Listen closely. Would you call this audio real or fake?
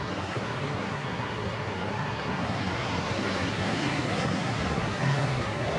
fake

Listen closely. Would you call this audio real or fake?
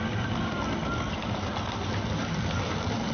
real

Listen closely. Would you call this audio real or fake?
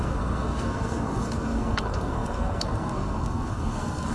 fake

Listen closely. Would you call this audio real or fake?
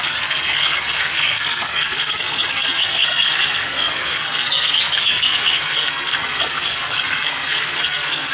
fake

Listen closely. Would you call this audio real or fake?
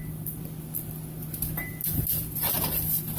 real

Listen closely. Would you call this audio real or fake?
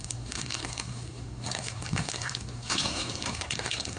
fake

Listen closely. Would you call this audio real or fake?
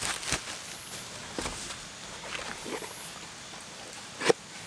real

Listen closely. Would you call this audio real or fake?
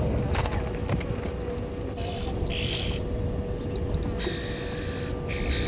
real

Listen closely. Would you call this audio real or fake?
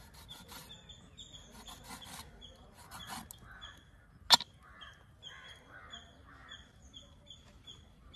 real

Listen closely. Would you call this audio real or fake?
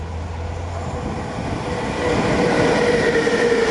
real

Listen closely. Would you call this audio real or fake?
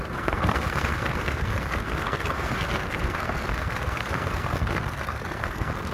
fake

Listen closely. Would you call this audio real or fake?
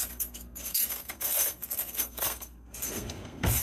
fake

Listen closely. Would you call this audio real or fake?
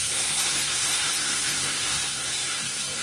fake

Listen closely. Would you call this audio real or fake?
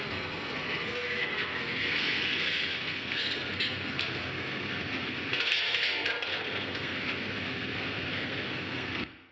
fake